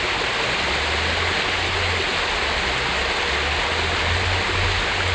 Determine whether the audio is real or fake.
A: real